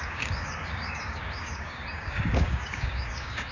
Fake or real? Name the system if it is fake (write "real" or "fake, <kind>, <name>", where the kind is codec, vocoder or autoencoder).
fake, codec, DAC